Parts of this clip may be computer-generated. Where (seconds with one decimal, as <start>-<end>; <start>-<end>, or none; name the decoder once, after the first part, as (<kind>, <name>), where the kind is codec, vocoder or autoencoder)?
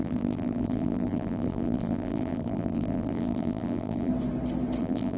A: 0.0-4.1 (vocoder, BigVGAN v2); 4.8-5.2